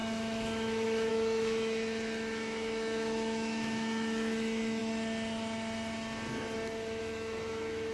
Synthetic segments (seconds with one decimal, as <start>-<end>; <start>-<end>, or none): 0.0-4.8; 7.0-7.9